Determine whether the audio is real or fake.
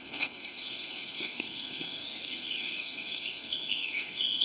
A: fake